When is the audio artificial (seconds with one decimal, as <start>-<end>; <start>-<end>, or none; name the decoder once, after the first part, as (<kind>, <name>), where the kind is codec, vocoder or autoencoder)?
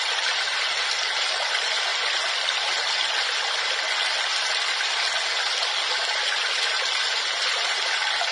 0.0-1.9 (vocoder, BigVGAN v2); 6.8-8.3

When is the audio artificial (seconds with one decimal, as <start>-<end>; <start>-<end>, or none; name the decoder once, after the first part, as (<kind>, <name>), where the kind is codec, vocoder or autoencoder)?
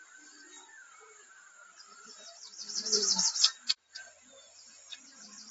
0.0-5.5 (vocoder, BigVGAN v2)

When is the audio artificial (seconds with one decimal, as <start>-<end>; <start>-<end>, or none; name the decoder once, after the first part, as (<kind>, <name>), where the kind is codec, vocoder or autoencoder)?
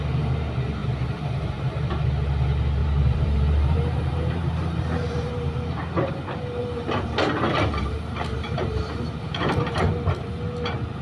0.8-2.1 (vocoder, BigVGAN v2); 2.8-6.1; 6.6-9.9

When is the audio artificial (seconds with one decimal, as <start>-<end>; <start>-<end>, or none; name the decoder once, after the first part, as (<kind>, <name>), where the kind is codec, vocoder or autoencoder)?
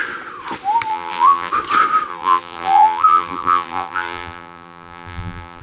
0.9-1.5 (vocoder, BigVGAN v2); 2.1-5.6